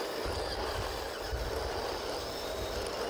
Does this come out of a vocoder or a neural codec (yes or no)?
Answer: no